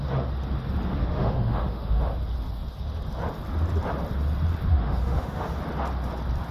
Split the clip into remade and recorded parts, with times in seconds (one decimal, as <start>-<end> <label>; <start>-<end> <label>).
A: 0.0-1.0 recorded; 1.0-2.0 remade; 2.0-4.7 recorded; 4.7-5.6 remade; 5.6-6.5 recorded